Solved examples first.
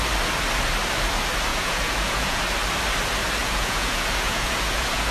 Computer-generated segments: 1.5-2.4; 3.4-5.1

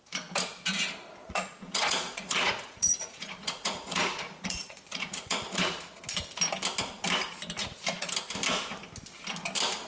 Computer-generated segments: 1.2-6.0; 7.6-8.1

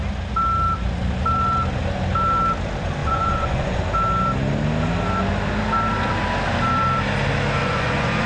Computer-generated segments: 3.0-3.8; 7.6-8.3